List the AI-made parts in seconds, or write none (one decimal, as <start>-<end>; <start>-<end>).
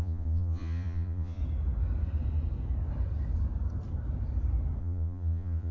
0.0-1.4; 4.8-5.7